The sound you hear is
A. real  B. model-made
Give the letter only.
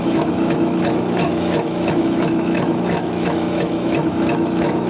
B